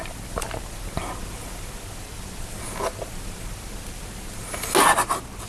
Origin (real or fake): real